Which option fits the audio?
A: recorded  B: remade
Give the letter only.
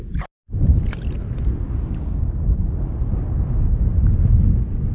A